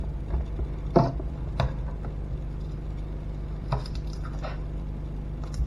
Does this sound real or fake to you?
real